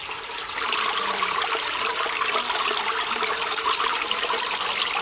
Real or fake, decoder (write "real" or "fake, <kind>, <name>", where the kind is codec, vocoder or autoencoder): real